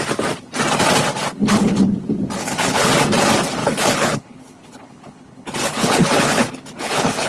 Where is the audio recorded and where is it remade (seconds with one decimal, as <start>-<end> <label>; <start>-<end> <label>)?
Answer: 0.0-1.4 recorded; 1.4-1.9 remade; 1.9-2.4 recorded; 2.4-2.9 remade; 2.9-3.6 recorded; 3.6-7.3 remade